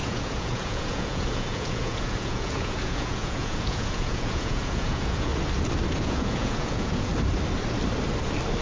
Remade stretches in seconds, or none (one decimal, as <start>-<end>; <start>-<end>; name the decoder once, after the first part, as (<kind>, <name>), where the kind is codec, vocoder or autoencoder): 0.0-5.3 (vocoder, Vocos); 5.9-7.1